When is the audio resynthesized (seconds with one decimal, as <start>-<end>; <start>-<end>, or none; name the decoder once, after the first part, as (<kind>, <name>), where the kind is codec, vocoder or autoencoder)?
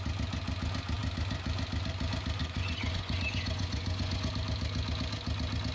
2.4-4.3 (vocoder, Vocos)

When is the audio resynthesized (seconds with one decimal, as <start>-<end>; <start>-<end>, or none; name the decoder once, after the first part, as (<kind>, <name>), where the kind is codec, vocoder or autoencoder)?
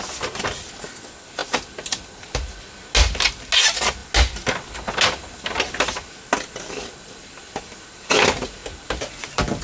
none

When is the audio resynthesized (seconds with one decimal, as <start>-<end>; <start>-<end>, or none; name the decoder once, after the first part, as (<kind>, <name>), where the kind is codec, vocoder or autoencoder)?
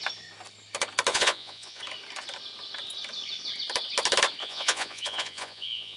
1.1-1.8 (vocoder, Vocos); 4.4-6.0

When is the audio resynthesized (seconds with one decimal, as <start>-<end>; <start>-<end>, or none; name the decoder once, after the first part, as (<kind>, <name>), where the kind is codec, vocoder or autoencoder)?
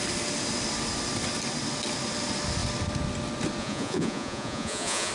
3.6-5.1 (vocoder, Vocos)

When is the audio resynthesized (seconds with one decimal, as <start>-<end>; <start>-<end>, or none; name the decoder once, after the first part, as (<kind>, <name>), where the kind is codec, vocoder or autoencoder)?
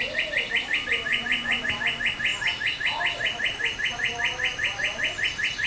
1.1-1.6 (vocoder, Vocos)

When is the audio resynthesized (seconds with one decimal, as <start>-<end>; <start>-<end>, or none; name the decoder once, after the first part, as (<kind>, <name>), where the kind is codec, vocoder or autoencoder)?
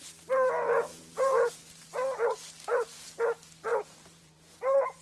0.9-1.5 (vocoder, Vocos); 2.7-3.2; 3.7-5.0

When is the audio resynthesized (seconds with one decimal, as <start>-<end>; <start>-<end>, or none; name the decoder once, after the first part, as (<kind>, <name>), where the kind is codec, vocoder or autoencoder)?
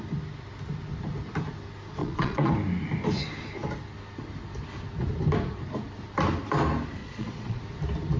2.0-2.5 (vocoder, Vocos); 7.0-7.6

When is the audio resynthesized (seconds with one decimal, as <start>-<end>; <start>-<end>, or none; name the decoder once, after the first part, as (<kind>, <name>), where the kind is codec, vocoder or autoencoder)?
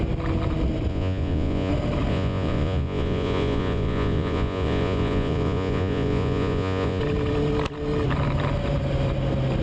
0.9-1.7 (vocoder, Vocos); 2.1-7.0